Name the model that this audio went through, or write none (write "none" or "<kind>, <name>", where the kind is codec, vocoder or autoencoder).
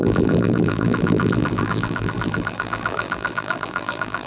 vocoder, BigVGAN v2